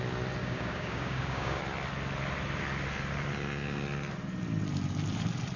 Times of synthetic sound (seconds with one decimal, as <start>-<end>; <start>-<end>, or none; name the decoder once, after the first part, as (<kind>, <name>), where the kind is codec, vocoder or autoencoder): 0.4-1.6 (codec, DAC)